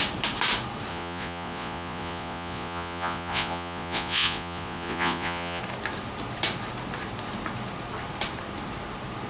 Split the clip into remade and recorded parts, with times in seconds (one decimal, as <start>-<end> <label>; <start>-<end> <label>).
0.0-0.9 recorded; 0.9-5.6 remade; 5.6-9.3 recorded